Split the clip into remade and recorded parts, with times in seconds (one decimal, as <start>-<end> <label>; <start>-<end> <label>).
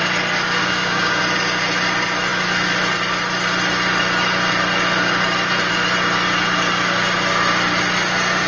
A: 0.0-0.6 recorded; 0.6-1.2 remade; 1.2-8.5 recorded